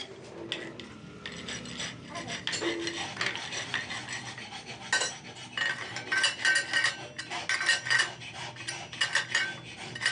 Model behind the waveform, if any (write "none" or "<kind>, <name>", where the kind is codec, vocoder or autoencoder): none